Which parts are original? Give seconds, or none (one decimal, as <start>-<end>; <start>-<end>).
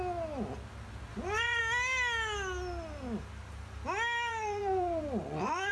0.0-1.1; 1.6-4.3